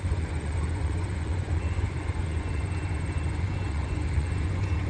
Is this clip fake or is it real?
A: fake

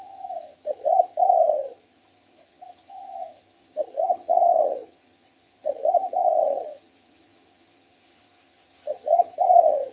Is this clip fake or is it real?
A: fake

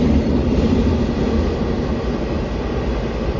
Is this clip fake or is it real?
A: real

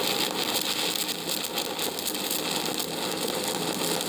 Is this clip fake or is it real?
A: real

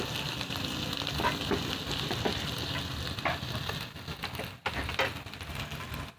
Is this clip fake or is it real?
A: real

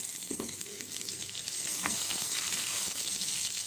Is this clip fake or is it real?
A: fake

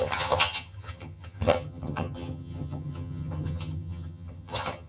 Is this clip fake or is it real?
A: fake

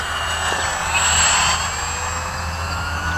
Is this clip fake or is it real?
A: real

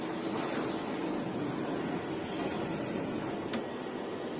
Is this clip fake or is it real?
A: real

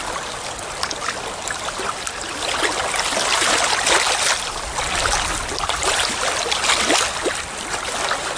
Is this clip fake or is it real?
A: real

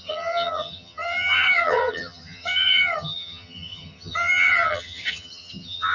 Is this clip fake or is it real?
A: fake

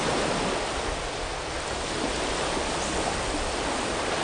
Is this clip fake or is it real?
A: real